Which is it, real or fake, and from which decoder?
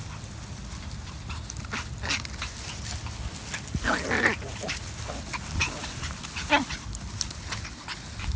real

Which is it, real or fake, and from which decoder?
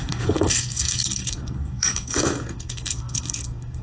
fake, codec, SNAC